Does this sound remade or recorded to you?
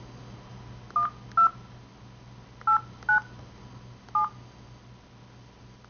recorded